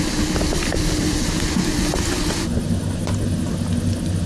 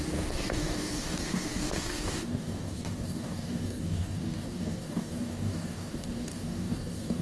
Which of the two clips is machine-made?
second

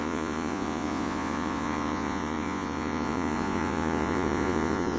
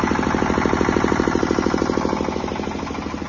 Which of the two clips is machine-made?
first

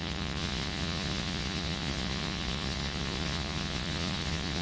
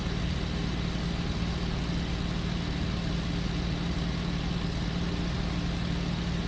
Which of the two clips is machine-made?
first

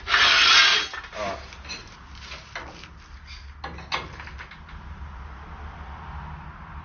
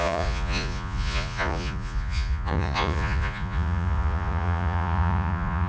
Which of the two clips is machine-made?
second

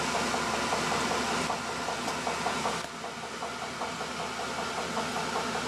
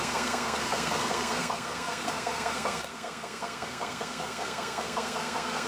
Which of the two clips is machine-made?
second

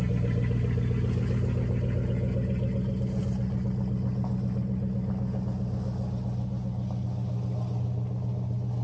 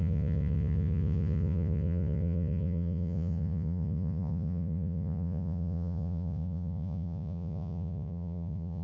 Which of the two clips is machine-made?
second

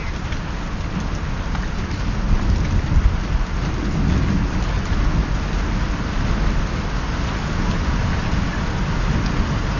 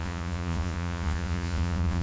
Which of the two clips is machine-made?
second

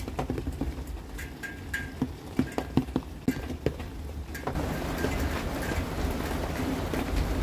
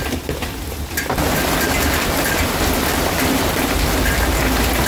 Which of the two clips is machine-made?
second